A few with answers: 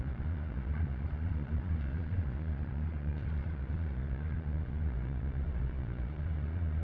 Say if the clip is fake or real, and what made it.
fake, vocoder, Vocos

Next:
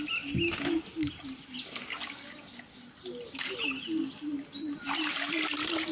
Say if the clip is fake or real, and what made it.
real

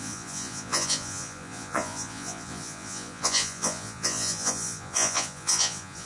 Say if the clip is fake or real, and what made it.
fake, vocoder, Vocos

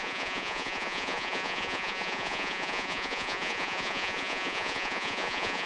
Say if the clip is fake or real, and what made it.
fake, vocoder, Vocos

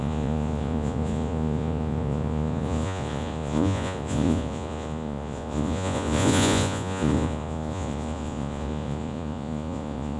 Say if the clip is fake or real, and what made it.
fake, vocoder, Vocos